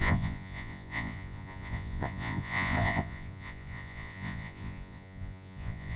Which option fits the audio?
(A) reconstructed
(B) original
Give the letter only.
A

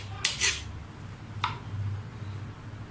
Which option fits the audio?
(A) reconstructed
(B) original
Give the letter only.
B